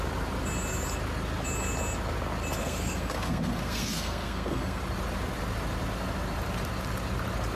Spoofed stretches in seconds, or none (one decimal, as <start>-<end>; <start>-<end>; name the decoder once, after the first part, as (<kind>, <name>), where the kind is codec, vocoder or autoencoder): 2.6-4.8 (codec, SNAC)